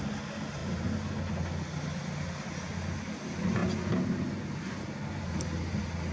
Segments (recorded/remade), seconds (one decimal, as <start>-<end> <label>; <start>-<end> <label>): 0.0-6.1 recorded